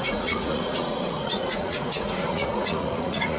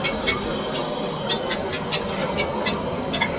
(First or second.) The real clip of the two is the second